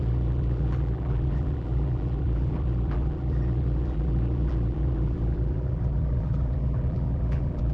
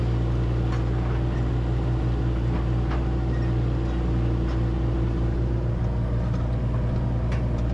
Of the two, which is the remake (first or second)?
first